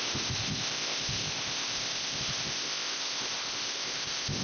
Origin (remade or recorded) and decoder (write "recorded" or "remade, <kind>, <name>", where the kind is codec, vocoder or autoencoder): remade, codec, ZipCodec